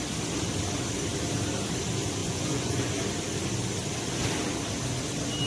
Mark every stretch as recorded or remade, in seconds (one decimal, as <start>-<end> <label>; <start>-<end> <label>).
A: 0.0-2.2 recorded; 2.2-2.9 remade; 2.9-5.5 recorded